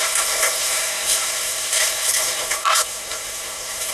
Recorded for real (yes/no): no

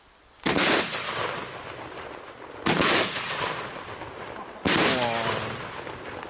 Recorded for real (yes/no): yes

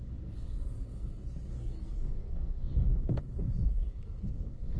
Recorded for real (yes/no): no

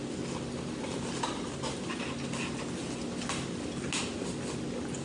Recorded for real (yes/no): yes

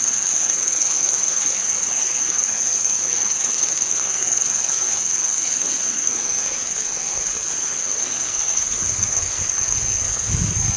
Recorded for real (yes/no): no